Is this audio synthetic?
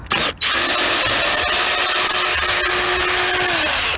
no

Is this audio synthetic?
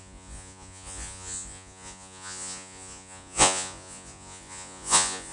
yes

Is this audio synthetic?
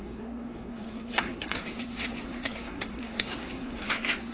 yes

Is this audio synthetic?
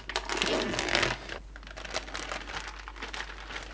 no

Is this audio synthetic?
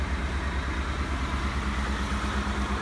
no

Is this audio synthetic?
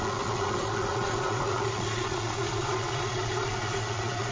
yes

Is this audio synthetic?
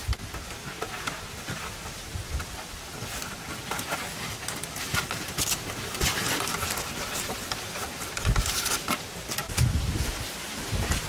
no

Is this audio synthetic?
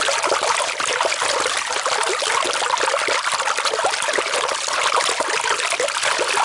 no